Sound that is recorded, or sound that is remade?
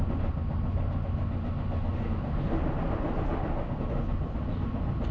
recorded